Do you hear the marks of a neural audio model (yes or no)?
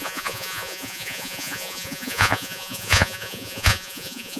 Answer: yes